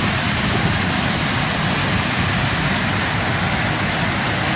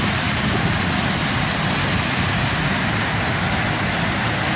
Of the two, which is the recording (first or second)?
second